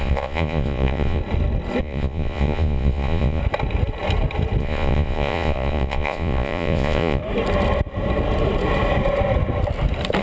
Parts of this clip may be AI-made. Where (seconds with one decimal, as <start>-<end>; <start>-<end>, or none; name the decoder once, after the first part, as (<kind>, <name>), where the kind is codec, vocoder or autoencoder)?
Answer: 0.0-1.2 (vocoder, Vocos); 1.8-3.4; 4.6-7.2